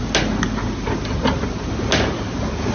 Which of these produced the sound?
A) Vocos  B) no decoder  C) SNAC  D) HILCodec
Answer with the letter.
B